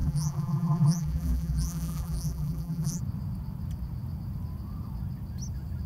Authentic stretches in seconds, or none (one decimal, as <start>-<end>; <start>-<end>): 3.0-5.9

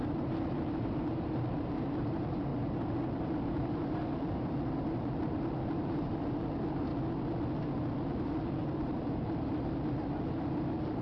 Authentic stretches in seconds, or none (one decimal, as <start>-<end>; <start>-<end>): 2.5-3.0; 6.9-8.1

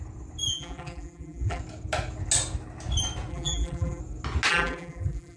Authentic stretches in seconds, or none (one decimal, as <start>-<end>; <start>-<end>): 0.0-0.5; 1.6-3.3; 4.0-4.5

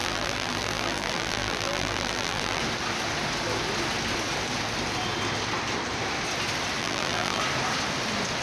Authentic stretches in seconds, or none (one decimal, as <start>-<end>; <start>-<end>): 2.6-6.8; 7.4-8.4

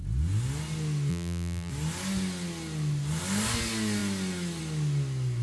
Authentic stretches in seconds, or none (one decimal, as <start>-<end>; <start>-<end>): 0.0-1.1; 1.7-5.4

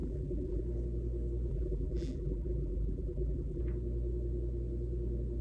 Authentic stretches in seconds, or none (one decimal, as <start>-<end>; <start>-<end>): 0.6-1.5; 3.6-5.4